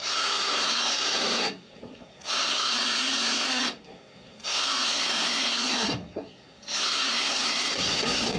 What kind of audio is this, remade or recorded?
remade